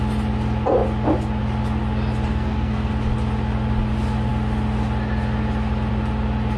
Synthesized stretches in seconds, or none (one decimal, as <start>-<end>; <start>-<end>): 2.3-2.9